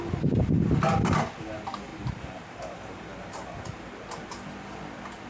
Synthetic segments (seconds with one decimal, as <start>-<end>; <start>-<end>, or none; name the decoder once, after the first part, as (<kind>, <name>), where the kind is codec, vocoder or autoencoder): 1.9-4.3 (vocoder, BigVGAN v2)